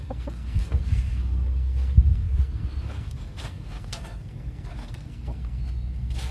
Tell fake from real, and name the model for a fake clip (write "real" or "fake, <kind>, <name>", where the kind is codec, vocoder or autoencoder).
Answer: fake, codec, SNAC